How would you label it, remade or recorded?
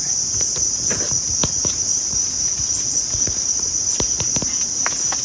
recorded